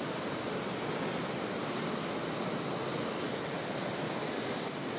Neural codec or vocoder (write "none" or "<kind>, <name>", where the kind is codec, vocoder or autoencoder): none